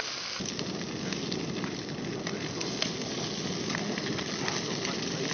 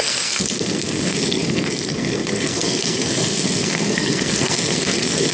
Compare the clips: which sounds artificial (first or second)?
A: second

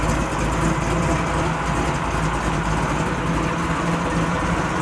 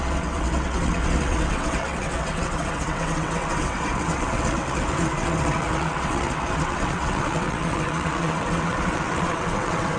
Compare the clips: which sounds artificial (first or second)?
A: second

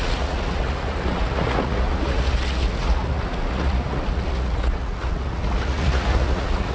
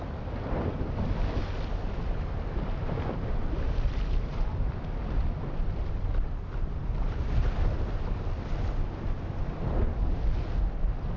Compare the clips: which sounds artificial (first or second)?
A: first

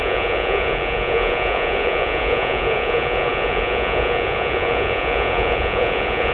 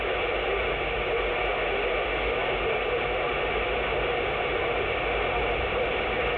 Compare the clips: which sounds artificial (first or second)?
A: first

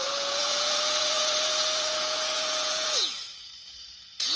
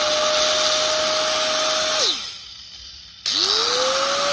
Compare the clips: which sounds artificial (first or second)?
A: first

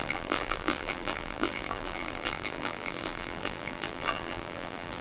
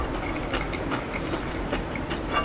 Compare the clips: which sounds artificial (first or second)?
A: first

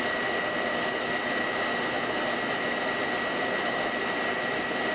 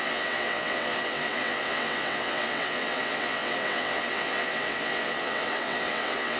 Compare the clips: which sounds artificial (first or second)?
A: second